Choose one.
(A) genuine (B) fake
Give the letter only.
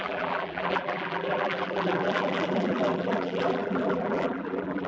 B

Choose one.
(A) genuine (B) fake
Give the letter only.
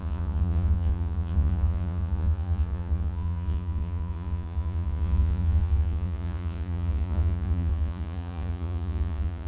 B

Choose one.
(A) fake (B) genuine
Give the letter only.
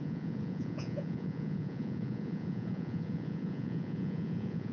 A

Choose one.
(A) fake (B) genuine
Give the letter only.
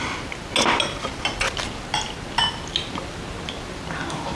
B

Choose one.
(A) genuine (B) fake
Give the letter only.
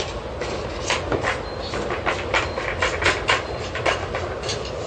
A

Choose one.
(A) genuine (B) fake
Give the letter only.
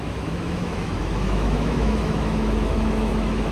B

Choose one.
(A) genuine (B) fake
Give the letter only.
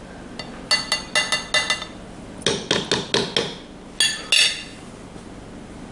A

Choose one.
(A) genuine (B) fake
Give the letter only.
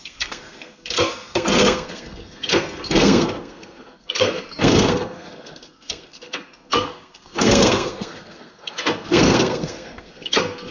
B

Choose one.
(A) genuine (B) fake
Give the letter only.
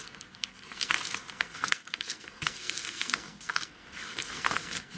B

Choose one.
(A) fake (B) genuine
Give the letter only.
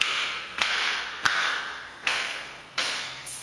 A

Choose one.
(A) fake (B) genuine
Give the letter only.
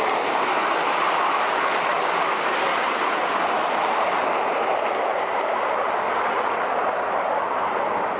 B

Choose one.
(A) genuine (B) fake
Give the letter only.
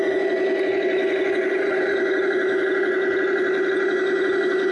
A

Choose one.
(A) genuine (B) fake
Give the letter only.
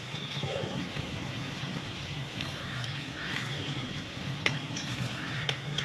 B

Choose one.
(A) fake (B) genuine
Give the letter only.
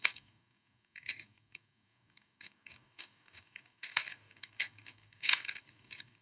A